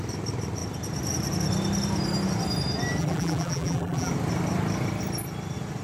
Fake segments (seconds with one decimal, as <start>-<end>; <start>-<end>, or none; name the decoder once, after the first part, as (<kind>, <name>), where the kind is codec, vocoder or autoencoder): 3.0-4.1 (vocoder, BigVGAN v2)